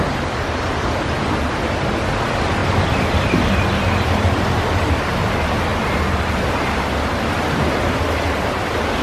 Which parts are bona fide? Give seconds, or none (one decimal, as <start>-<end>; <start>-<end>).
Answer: 0.0-2.6; 4.8-5.7; 7.7-9.0